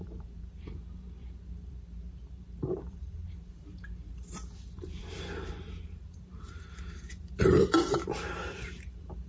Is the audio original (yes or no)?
no